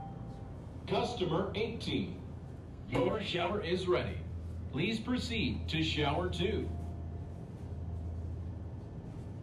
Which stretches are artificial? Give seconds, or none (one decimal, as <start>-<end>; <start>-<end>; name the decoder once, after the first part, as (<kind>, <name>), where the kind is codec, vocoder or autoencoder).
2.7-3.5 (codec, SNAC)